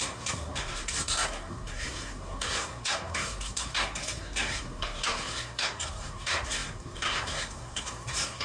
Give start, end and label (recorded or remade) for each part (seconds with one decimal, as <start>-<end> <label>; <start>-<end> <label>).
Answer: 0.0-8.4 remade